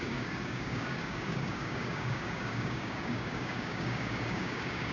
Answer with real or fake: fake